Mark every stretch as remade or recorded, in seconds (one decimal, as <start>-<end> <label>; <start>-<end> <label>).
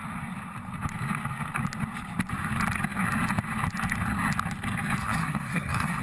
0.0-5.0 recorded; 5.0-6.0 remade